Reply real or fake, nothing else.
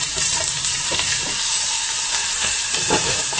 fake